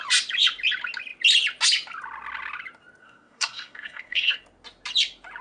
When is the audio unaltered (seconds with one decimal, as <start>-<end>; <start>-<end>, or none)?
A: 0.0-3.0; 4.4-5.4